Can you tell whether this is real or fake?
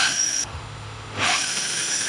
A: fake